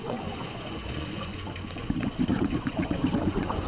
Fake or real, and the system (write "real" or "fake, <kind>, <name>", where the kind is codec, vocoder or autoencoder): fake, vocoder, Vocos